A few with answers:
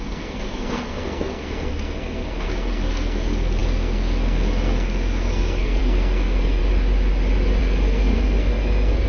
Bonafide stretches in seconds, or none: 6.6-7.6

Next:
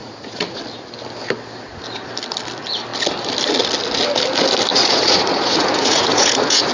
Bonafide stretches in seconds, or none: 0.6-4.7

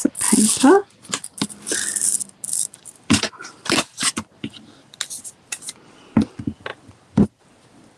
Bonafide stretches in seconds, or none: 0.0-0.8; 5.0-6.7; 7.4-8.0

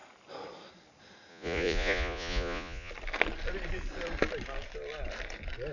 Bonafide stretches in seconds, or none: 0.0-1.3; 2.9-5.7

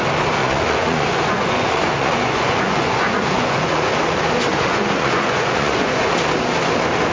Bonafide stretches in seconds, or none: 0.0-0.4; 3.9-4.5; 6.1-7.1

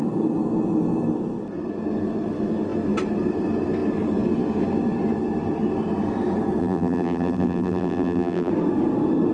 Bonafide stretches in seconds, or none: 0.0-6.6; 8.5-9.3

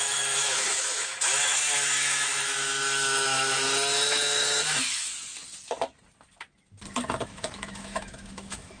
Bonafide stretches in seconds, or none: 5.1-7.2

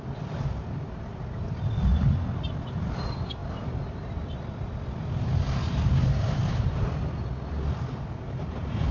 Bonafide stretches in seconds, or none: 0.0-8.9